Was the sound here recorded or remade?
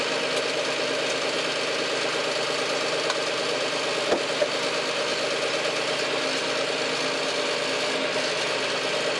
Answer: recorded